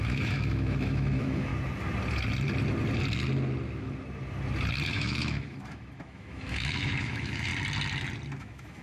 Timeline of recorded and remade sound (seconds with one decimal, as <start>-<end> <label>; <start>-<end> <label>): 0.0-1.5 remade; 1.5-4.9 recorded; 4.9-7.5 remade; 7.5-8.4 recorded; 8.4-8.8 remade